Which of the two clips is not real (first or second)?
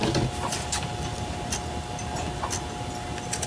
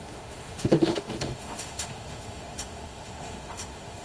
second